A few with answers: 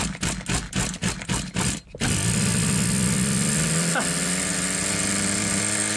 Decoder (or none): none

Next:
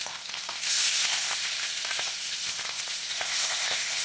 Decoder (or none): codec, ZipCodec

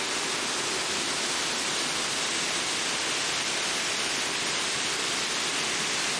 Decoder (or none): none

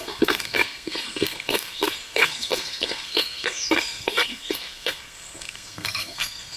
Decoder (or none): codec, SNAC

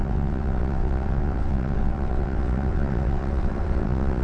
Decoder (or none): vocoder, WaveNeXt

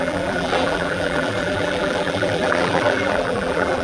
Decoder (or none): vocoder, BigVGAN v2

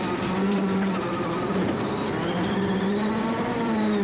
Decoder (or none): vocoder, BigVGAN v2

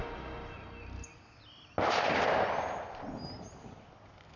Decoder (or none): none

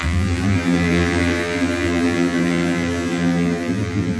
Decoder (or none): vocoder, BigVGAN v2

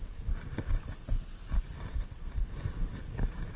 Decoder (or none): none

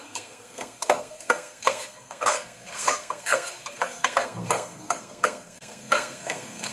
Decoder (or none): codec, SNAC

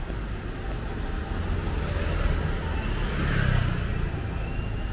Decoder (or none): none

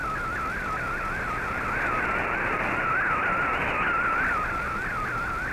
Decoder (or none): none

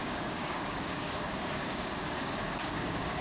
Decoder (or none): codec, DAC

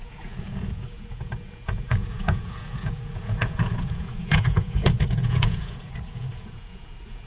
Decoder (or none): vocoder, Vocos